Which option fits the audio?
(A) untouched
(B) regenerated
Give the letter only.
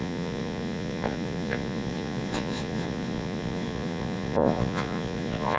B